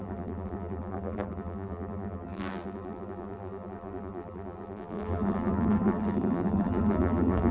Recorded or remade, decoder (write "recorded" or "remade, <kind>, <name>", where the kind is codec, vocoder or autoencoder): remade, vocoder, BigVGAN v2